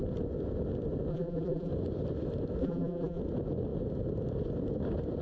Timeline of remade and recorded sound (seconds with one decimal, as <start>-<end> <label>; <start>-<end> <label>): 0.0-1.1 recorded; 1.1-1.7 remade; 1.7-2.6 recorded; 2.6-3.2 remade; 3.2-5.2 recorded